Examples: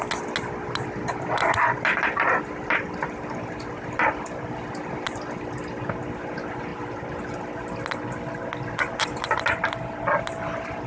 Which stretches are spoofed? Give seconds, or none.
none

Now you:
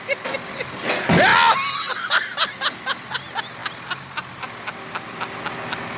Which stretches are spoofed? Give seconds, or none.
none

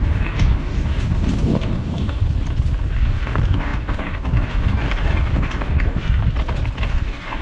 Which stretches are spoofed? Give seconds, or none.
0.0-2.2; 2.9-6.2; 6.8-7.4

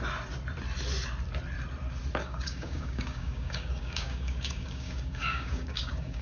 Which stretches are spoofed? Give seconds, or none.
2.2-6.2

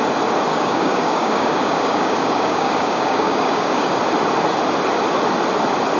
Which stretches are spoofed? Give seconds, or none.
0.5-4.0

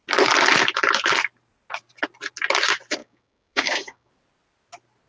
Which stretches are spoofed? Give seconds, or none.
3.0-4.1

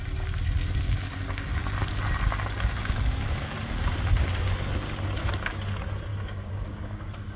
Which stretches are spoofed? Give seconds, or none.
6.1-7.4

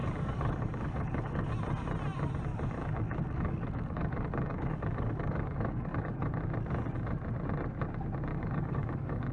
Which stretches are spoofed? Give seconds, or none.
0.0-1.5; 2.5-6.3; 8.3-9.3